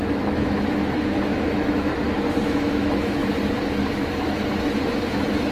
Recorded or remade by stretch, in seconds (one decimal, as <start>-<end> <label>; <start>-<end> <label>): 0.0-1.9 remade; 1.9-2.4 recorded; 2.4-3.2 remade; 3.2-3.8 recorded; 3.8-5.5 remade